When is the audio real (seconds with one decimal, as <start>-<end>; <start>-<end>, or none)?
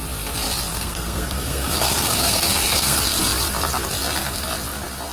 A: 0.0-0.7; 3.0-5.1